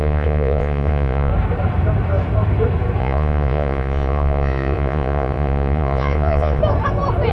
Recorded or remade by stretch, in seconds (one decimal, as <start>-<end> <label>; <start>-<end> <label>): 0.0-1.3 remade; 1.3-3.0 recorded; 3.0-6.6 remade; 6.6-7.3 recorded